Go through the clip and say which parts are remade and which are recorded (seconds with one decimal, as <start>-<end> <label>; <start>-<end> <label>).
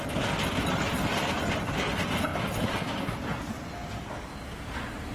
0.0-5.1 recorded